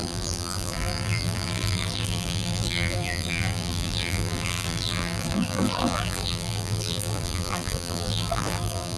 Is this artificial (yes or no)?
yes